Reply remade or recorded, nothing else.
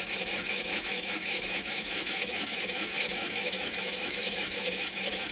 remade